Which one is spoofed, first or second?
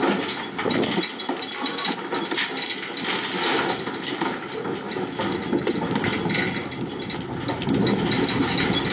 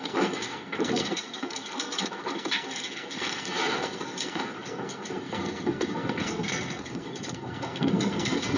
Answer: second